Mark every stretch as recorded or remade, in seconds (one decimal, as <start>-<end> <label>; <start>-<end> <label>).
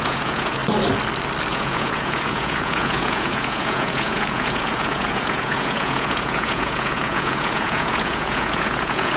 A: 0.0-0.6 remade; 0.6-1.5 recorded; 1.5-9.2 remade